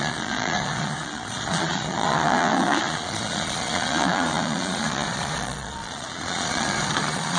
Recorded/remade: remade